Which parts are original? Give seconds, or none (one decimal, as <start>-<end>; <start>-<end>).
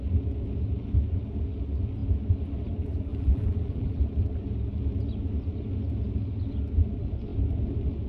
0.0-3.1; 4.0-8.1